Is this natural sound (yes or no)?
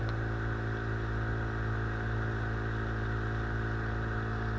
yes